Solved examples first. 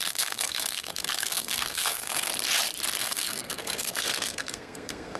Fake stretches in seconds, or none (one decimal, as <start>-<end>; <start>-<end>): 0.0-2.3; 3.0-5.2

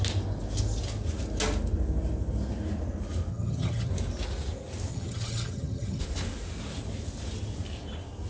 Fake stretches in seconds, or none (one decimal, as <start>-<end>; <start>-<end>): 3.3-3.9; 4.9-6.0

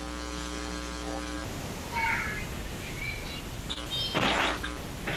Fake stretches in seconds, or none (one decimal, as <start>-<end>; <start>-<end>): none